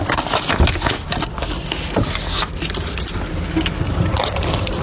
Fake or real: real